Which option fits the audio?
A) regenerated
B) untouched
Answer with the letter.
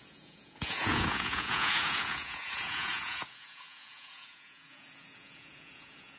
A